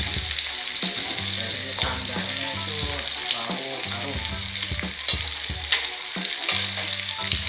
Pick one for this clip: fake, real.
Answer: real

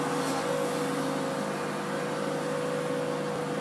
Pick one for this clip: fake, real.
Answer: real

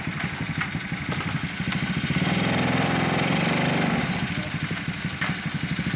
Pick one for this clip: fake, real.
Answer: real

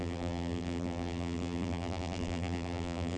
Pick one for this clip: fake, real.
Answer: fake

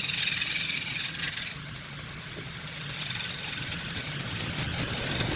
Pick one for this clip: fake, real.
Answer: real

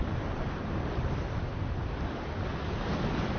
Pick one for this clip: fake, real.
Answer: real